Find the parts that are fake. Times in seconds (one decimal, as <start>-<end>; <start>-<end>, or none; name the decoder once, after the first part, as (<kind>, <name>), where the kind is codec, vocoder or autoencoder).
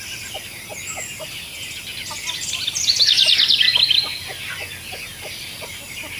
none